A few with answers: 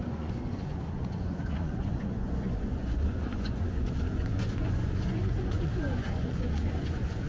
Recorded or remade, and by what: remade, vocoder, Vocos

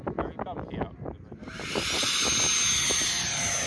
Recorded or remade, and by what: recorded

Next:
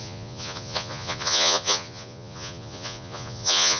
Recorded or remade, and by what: remade, vocoder, Vocos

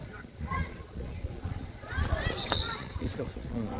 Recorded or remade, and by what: remade, vocoder, Vocos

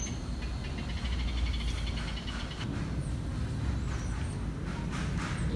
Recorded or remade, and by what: recorded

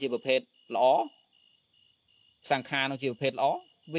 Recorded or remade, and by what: recorded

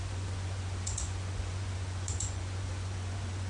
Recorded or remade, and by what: remade, vocoder, Vocos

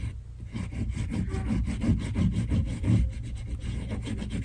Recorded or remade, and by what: recorded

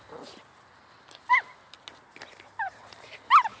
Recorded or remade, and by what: recorded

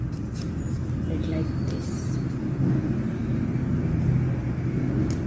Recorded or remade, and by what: recorded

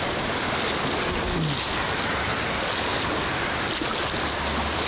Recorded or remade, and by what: recorded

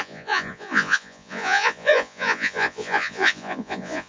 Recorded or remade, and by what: remade, vocoder, Vocos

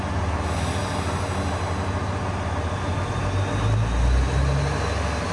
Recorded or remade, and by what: recorded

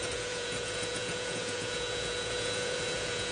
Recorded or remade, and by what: remade, vocoder, Vocos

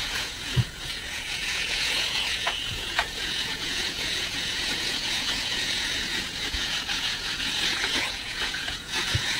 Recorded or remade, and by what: remade, vocoder, Vocos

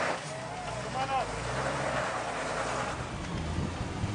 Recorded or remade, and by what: recorded